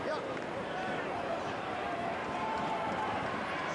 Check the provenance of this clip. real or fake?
fake